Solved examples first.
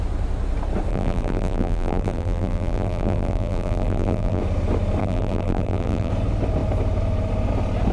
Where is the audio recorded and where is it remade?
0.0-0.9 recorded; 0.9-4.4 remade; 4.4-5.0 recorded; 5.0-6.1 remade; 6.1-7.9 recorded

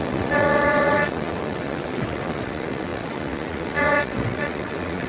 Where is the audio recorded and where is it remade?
0.0-5.1 remade

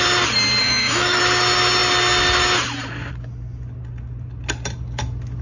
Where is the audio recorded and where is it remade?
0.0-0.6 recorded; 0.6-1.2 remade; 1.2-5.4 recorded

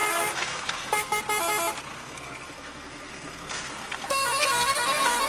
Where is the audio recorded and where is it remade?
0.0-1.2 remade; 1.2-1.9 recorded; 1.9-5.3 remade

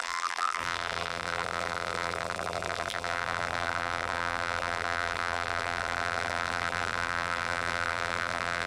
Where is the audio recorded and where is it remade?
0.0-8.7 remade